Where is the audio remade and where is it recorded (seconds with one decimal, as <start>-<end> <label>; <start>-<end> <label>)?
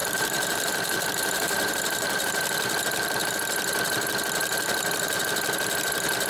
0.0-3.3 remade; 3.3-4.4 recorded; 4.4-5.2 remade; 5.2-6.3 recorded